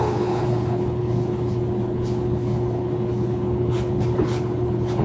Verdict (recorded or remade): remade